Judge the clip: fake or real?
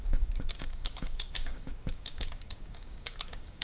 fake